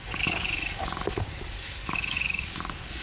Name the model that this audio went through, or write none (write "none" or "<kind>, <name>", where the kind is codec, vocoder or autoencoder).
codec, DAC